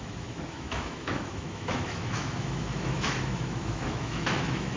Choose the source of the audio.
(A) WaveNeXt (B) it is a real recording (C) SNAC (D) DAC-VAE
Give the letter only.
D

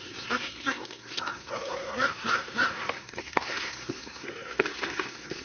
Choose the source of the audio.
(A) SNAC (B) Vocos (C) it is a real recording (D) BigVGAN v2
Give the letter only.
A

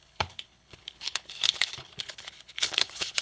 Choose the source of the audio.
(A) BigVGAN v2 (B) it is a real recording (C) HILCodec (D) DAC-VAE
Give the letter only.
C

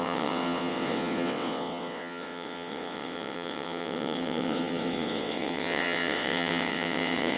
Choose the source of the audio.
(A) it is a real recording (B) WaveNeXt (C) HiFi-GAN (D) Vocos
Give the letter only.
B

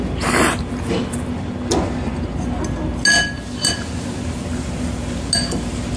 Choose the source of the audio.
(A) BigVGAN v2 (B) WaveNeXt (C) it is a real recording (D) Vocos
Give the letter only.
C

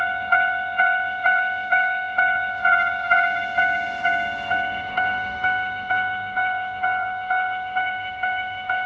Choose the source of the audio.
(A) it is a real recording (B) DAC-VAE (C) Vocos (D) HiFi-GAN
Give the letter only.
B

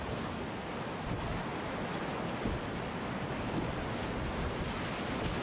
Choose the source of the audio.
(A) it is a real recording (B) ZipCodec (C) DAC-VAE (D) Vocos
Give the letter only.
A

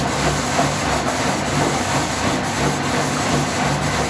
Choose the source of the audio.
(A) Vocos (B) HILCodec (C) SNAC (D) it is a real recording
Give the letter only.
D